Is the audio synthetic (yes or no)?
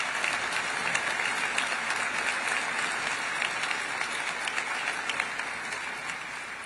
no